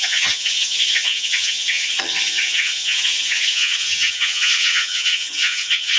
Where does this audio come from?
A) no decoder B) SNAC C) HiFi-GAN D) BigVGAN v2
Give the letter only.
C